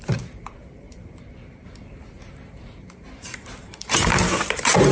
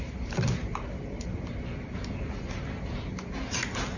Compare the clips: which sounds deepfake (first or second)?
first